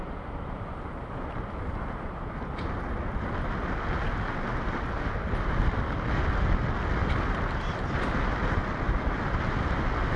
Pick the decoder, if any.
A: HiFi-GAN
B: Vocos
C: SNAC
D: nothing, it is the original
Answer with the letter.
D